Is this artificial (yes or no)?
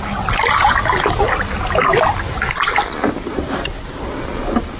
no